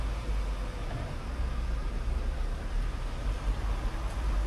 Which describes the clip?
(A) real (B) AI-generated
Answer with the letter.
A